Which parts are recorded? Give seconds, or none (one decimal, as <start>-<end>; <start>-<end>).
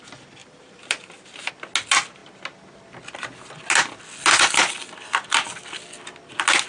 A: 0.0-0.4; 1.5-6.7